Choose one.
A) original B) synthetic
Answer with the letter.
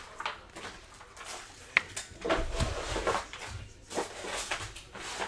A